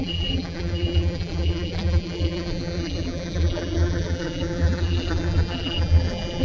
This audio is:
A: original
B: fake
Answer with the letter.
B